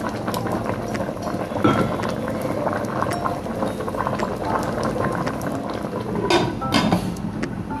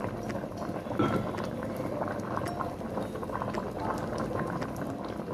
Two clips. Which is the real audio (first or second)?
first